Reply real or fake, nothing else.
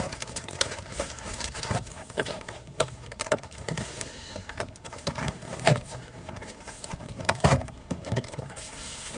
fake